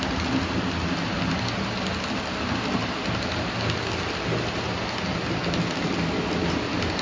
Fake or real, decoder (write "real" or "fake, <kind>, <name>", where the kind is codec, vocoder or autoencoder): real